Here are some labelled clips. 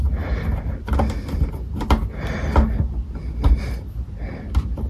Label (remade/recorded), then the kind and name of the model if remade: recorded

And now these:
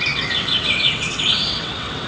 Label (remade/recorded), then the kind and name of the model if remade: remade, vocoder, WaveNeXt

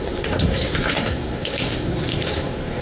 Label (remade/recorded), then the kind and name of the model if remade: remade, codec, SNAC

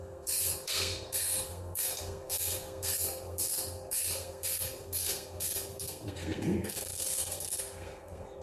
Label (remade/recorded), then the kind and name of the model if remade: remade, codec, SNAC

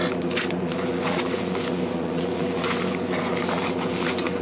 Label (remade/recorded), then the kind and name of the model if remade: remade, vocoder, Vocos